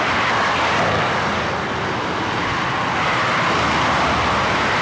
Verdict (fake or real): real